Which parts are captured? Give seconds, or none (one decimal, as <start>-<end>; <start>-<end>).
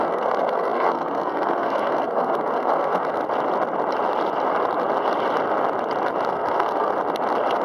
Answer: 3.2-6.3; 6.9-7.6